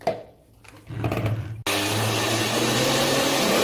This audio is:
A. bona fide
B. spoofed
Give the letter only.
A